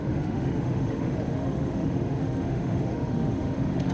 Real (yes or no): no